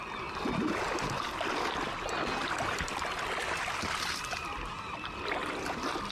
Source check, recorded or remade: recorded